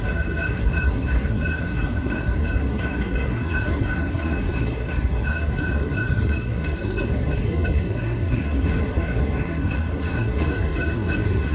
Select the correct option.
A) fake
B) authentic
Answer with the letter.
A